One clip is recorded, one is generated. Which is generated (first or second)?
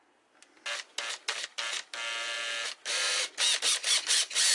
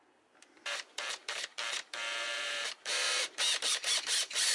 second